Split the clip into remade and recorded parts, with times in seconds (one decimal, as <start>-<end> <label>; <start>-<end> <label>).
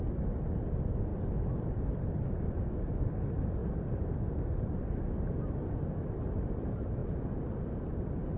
0.0-3.6 recorded; 3.6-4.3 remade; 4.3-8.4 recorded